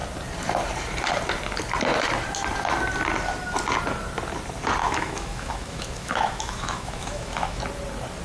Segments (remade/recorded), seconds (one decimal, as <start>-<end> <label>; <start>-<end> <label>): 0.0-4.8 recorded; 4.8-7.6 remade; 7.6-8.2 recorded

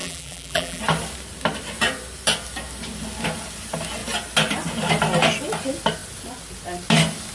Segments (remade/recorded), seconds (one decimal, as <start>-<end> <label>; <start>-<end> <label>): 0.0-0.8 remade; 0.8-7.3 recorded

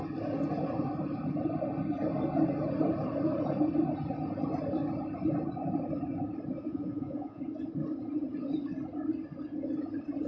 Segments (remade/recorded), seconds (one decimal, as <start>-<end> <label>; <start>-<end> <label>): 0.0-6.6 recorded; 6.6-7.4 remade; 7.4-10.3 recorded

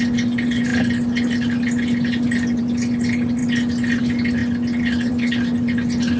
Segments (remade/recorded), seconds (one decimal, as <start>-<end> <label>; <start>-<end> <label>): 0.0-6.2 recorded

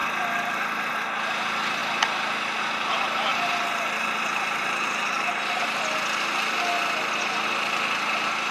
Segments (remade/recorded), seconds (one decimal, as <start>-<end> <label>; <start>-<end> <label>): 0.0-3.3 recorded; 3.3-5.8 remade; 5.8-8.5 recorded